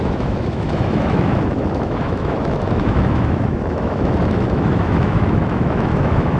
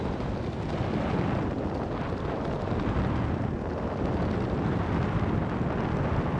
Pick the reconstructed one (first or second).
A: first